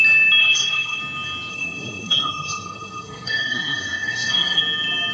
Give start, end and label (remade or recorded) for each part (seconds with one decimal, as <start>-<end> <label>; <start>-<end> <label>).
0.0-0.4 recorded; 0.4-1.0 remade; 1.0-1.5 recorded; 1.5-4.6 remade; 4.6-5.1 recorded